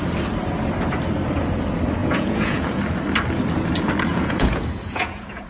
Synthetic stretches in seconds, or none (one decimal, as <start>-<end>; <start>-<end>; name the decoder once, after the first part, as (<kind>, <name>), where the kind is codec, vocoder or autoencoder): 2.0-2.8 (vocoder, Vocos); 4.1-5.5